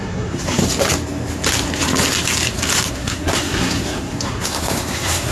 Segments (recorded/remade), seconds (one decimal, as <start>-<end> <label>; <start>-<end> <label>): 0.0-0.6 remade; 0.6-2.9 recorded; 2.9-5.3 remade